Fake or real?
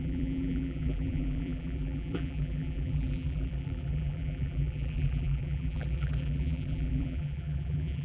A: fake